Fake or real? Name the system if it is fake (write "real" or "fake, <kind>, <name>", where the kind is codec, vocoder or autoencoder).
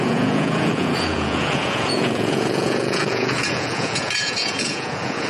fake, vocoder, Vocos